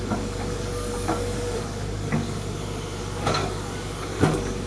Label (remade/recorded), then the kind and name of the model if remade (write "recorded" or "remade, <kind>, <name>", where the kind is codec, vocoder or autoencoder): remade, codec, DAC